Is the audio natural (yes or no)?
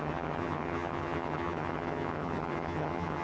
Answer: no